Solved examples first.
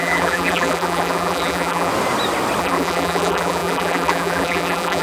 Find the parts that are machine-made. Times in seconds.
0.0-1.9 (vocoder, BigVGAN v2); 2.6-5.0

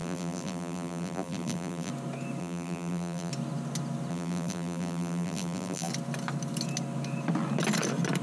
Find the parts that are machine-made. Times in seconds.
0.0-1.9 (vocoder, BigVGAN v2); 2.4-3.3; 4.1-5.9

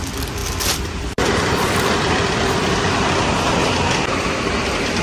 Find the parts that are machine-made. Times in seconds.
0.4-3.4 (vocoder, BigVGAN v2)

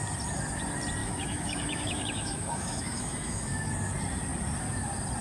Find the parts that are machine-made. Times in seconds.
1.0-3.7 (autoencoder, DAC-VAE)